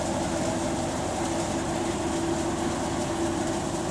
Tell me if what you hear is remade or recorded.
recorded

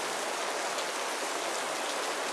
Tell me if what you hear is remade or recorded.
recorded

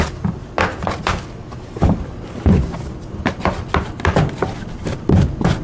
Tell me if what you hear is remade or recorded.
recorded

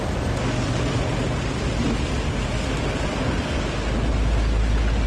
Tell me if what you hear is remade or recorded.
recorded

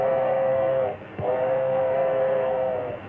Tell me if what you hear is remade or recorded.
remade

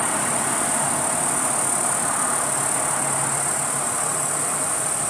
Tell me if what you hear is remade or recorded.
recorded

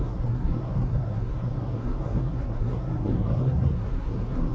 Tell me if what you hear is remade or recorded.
remade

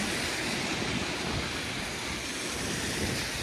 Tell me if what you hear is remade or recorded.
recorded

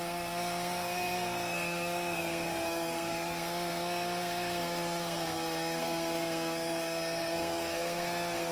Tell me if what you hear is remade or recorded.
remade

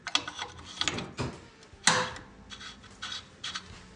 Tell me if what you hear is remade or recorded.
recorded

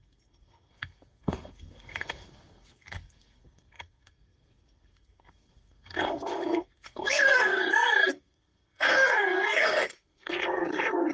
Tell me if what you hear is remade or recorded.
remade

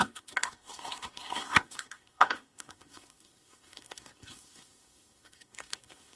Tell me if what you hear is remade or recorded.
remade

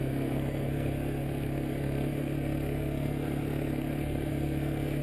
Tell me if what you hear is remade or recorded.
remade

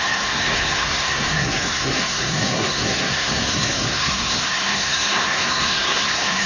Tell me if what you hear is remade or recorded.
remade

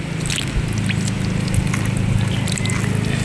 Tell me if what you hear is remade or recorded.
recorded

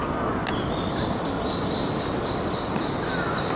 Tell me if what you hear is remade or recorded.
recorded